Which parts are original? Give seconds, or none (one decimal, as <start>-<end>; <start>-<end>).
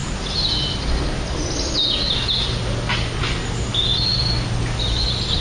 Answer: 0.0-5.4